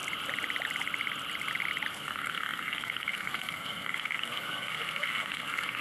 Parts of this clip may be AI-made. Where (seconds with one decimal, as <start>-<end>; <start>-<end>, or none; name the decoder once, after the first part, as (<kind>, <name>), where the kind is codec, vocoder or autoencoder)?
1.9-5.8 (codec, SNAC)